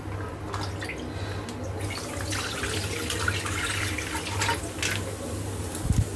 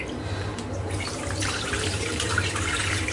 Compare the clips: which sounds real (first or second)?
first